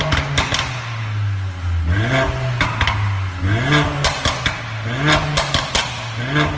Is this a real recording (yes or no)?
yes